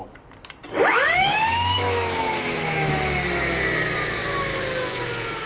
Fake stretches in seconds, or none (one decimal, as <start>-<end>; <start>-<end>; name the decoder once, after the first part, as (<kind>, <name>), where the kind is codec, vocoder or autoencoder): 0.8-2.9 (autoencoder, DAC-VAE); 4.2-5.0